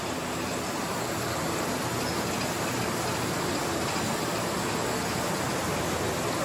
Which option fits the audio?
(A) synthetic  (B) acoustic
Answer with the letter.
B